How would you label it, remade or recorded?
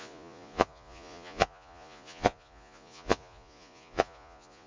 remade